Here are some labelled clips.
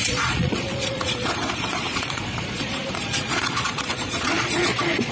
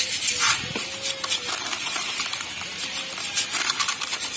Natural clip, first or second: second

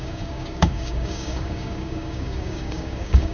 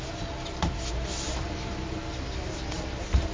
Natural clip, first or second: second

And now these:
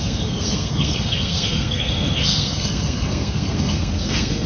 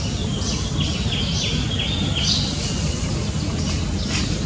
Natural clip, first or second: second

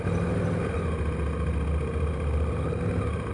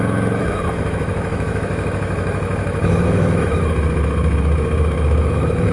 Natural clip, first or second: first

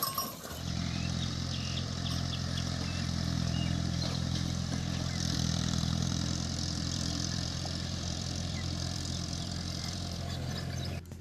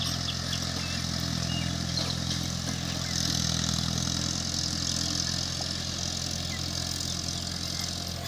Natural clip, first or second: second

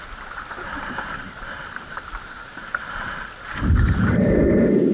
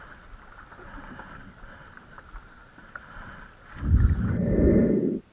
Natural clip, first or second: second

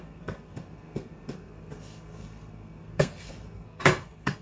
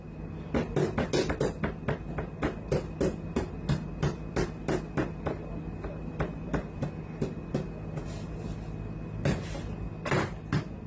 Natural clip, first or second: second